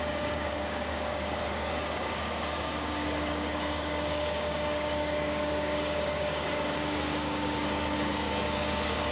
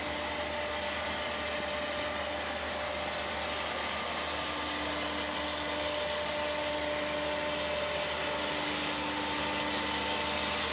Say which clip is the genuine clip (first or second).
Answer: second